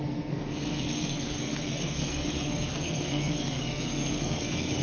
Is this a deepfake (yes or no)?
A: yes